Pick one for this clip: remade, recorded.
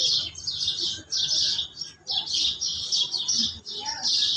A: recorded